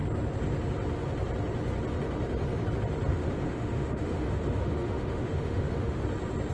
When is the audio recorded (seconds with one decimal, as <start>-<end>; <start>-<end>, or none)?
0.0-3.1; 6.0-6.5